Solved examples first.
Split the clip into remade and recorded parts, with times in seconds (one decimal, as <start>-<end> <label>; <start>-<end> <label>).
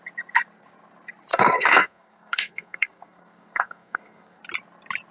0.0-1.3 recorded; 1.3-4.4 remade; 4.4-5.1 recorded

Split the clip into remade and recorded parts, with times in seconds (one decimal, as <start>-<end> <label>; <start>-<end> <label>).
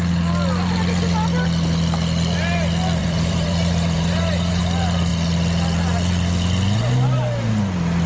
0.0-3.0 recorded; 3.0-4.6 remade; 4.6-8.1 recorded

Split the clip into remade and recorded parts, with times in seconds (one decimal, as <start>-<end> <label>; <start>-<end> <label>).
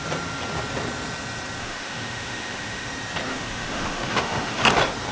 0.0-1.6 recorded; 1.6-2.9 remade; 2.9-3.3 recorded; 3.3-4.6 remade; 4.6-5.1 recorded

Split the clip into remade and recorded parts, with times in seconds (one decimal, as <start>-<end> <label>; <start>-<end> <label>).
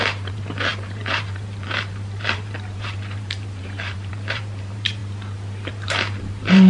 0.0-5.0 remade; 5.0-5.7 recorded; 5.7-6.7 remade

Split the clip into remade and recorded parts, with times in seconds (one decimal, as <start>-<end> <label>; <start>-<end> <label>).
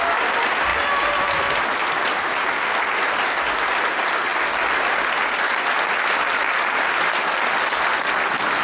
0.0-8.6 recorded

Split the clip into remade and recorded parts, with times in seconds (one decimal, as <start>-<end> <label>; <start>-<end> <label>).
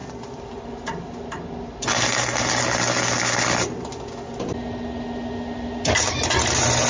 0.0-0.8 remade; 0.8-6.9 recorded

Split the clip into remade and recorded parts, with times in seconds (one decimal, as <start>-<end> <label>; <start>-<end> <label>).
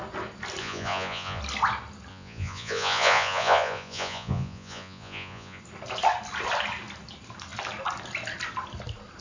0.0-0.6 recorded; 0.6-1.4 remade; 1.4-2.1 recorded; 2.1-5.6 remade; 5.6-9.2 recorded